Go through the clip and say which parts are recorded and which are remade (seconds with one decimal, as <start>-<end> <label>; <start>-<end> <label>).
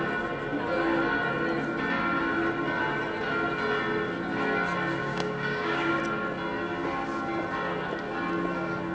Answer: 0.0-5.0 recorded; 5.0-6.0 remade; 6.0-8.9 recorded